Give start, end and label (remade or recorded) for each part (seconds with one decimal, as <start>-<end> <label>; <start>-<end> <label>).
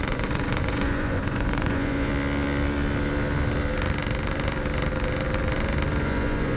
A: 0.0-2.1 remade; 2.1-6.0 recorded; 6.0-6.6 remade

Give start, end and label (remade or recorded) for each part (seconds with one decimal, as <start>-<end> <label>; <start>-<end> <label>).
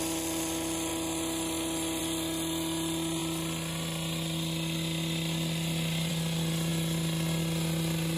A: 0.0-8.2 recorded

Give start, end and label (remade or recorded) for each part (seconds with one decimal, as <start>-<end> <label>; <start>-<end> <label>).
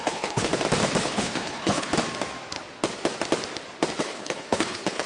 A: 0.0-0.5 remade; 0.5-1.0 recorded; 1.0-1.9 remade; 1.9-4.0 recorded; 4.0-5.1 remade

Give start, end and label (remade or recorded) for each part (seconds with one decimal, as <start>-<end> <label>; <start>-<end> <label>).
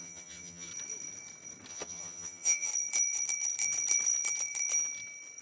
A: 0.0-0.7 remade; 0.7-1.7 recorded; 1.7-2.7 remade; 2.7-5.4 recorded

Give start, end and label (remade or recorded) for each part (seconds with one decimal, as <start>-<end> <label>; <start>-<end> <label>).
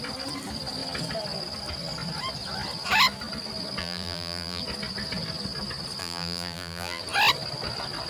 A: 0.0-3.8 recorded; 3.8-4.6 remade; 4.6-6.0 recorded; 6.0-7.0 remade; 7.0-8.1 recorded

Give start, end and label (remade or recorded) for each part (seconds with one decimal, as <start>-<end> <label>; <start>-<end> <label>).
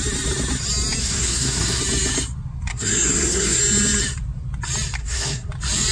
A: 0.0-1.0 recorded; 1.0-1.8 remade; 1.8-2.7 recorded; 2.7-3.6 remade; 3.6-5.0 recorded; 5.0-5.5 remade; 5.5-5.9 recorded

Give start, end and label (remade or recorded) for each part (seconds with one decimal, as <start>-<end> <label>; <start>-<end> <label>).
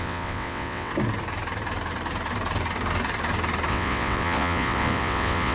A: 0.0-0.9 remade; 0.9-3.7 recorded; 3.7-5.5 remade